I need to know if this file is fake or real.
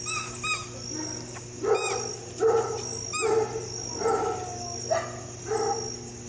real